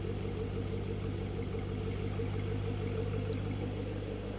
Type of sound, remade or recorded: recorded